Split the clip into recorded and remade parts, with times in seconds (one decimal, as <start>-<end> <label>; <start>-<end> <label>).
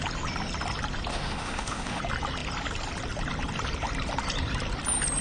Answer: 0.0-1.1 recorded; 1.1-2.0 remade; 2.0-5.2 recorded